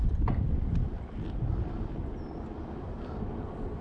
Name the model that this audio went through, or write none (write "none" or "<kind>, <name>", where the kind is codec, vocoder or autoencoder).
none